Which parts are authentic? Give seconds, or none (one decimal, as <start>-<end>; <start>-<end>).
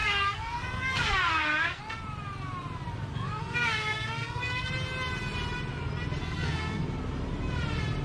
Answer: 1.8-3.1; 4.7-6.2; 6.8-8.0